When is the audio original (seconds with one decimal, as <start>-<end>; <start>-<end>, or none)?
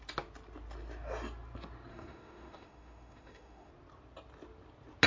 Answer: 0.0-1.9; 3.7-5.1